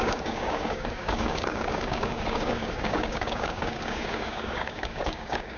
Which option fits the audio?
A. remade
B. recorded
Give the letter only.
A